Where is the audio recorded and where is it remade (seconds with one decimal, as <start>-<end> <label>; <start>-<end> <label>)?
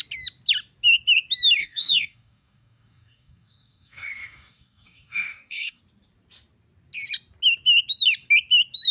0.0-1.6 recorded; 1.6-5.8 remade; 5.8-8.9 recorded